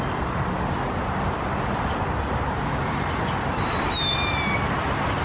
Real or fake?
real